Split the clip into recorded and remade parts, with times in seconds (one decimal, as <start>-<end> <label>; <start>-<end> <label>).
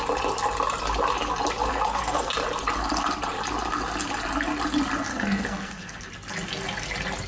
0.0-1.7 recorded; 1.7-2.3 remade; 2.3-5.1 recorded; 5.1-6.1 remade; 6.1-7.3 recorded